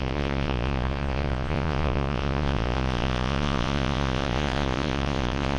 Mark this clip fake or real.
fake